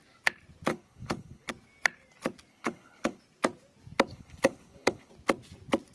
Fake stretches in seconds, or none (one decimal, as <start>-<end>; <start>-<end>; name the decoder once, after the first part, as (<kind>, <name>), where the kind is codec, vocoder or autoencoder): 0.7-1.5 (codec, HILCodec); 2.5-3.2; 4.1-5.1